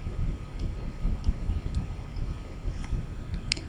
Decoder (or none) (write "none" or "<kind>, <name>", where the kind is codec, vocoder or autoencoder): codec, DAC